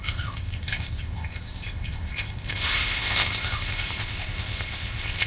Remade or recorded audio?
remade